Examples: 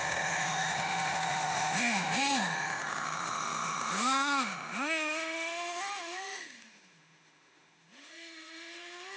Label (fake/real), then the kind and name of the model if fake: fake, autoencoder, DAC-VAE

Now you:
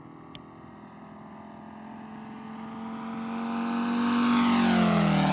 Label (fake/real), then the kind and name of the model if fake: real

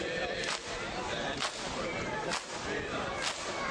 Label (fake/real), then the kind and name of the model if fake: fake, vocoder, BigVGAN v2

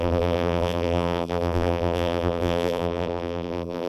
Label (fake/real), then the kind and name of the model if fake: fake, vocoder, BigVGAN v2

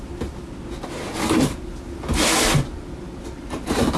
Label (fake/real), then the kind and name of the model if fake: real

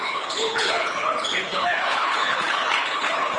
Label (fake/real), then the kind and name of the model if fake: fake, codec, HILCodec